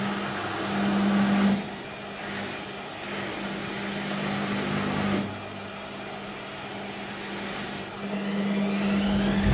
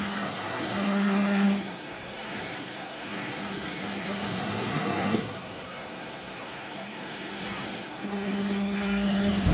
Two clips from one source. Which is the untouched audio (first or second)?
first